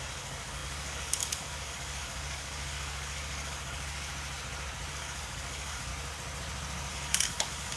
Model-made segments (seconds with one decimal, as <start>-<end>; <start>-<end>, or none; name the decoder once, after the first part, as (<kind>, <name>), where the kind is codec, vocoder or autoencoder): 0.0-4.1 (codec, DAC); 4.9-5.9; 6.9-7.8